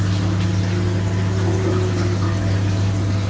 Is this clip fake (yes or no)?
no